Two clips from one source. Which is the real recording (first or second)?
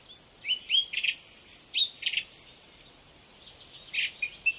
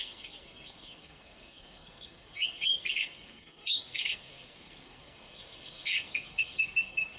first